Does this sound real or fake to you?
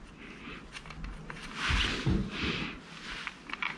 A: real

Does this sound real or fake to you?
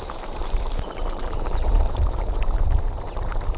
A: fake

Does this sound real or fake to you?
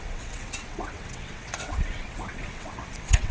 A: fake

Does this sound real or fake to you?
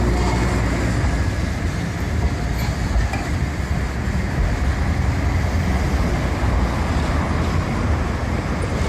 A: real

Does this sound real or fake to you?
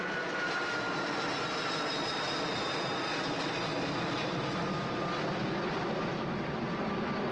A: real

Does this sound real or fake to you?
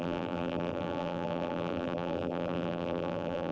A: fake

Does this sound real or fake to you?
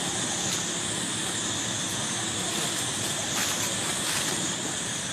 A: real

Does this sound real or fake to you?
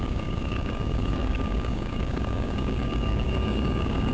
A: fake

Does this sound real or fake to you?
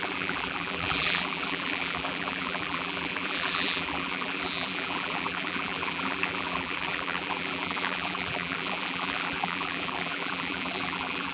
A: fake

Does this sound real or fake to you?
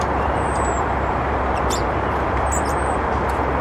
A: fake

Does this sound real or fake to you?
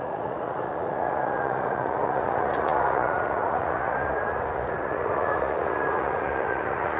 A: fake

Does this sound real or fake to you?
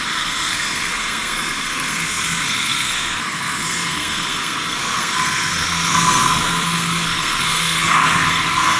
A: fake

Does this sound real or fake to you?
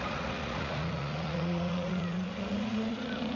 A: fake